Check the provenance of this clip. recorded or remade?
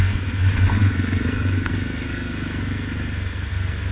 remade